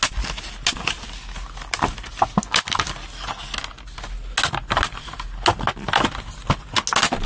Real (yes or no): yes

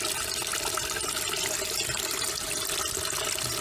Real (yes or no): yes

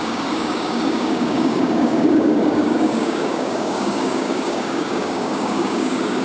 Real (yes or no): no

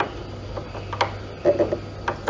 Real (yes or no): yes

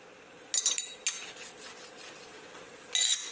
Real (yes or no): yes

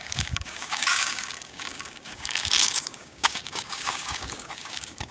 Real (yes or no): no